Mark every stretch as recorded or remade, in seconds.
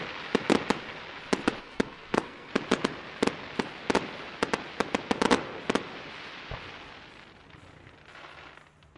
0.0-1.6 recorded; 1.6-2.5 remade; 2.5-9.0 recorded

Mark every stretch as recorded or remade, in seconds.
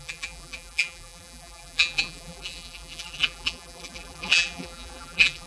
0.0-5.5 remade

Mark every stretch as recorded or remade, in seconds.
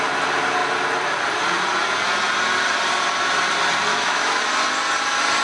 0.0-3.9 recorded; 3.9-4.4 remade; 4.4-5.4 recorded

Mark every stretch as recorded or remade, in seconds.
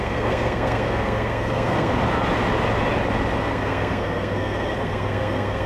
0.0-1.9 remade; 1.9-3.4 recorded; 3.4-5.7 remade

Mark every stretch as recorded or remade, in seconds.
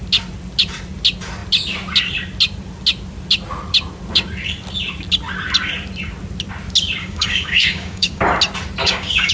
0.0-7.0 recorded; 7.0-8.2 remade; 8.2-8.8 recorded; 8.8-9.3 remade